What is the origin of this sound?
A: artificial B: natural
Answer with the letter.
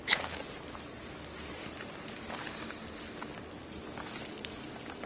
B